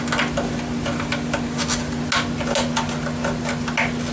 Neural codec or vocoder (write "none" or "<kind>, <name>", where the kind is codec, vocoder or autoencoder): none